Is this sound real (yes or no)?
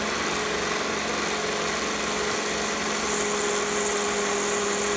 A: yes